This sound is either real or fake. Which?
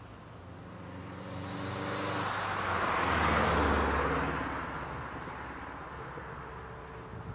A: real